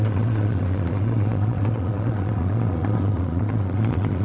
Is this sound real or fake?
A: fake